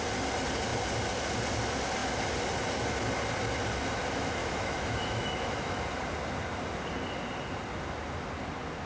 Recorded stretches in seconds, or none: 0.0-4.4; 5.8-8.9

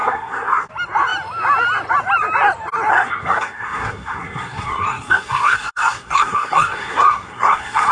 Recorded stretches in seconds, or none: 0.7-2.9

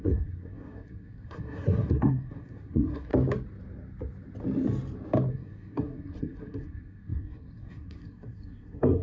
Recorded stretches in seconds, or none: 3.1-5.3